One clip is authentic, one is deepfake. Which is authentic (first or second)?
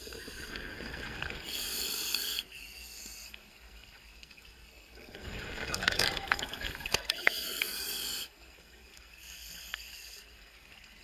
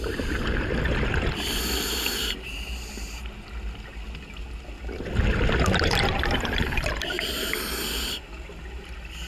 second